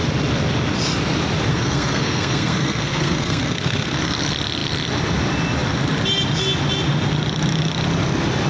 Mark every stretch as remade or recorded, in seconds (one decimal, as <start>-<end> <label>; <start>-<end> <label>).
0.0-1.5 recorded; 1.5-4.0 remade; 4.0-8.5 recorded